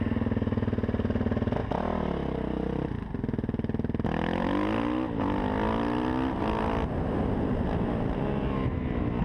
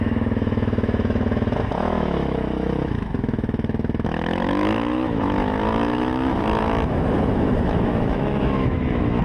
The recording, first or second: first